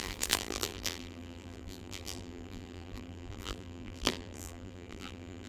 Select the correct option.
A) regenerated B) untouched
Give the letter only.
A